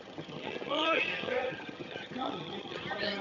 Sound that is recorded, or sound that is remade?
remade